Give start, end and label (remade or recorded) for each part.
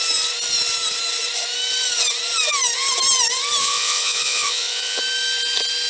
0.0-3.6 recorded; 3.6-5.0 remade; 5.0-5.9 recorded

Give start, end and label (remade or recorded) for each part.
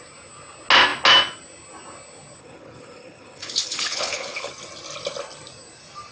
0.0-2.4 recorded; 2.4-4.5 remade; 4.5-6.1 recorded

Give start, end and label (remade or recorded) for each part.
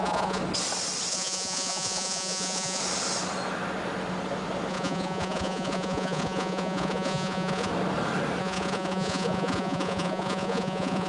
0.0-0.4 remade; 0.4-1.1 recorded; 1.1-2.8 remade; 2.8-4.7 recorded; 4.7-7.7 remade; 7.7-8.4 recorded; 8.4-11.1 remade